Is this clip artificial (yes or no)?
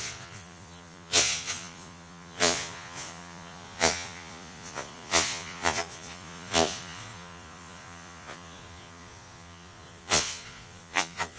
yes